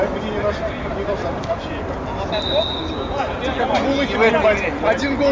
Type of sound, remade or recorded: recorded